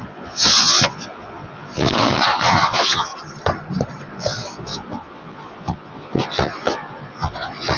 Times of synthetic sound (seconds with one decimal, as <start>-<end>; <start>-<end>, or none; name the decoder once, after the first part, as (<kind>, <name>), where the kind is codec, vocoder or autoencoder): 0.0-3.1 (vocoder, Vocos); 4.0-7.8